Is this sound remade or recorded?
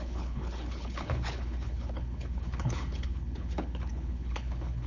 remade